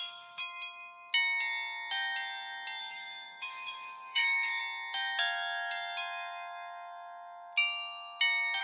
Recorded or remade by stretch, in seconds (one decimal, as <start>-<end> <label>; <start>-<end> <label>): 0.0-0.4 remade; 0.4-2.8 recorded; 2.8-4.6 remade; 4.6-8.6 recorded